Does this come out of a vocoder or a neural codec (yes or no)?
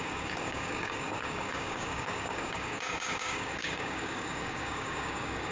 yes